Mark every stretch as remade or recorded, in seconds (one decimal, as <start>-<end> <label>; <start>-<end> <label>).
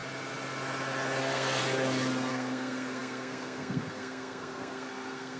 0.0-1.2 recorded; 1.2-1.6 remade; 1.6-2.3 recorded; 2.3-5.4 remade